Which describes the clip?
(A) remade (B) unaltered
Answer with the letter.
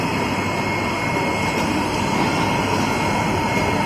B